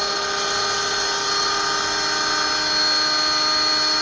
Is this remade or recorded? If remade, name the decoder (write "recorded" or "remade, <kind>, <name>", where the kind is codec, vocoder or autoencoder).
recorded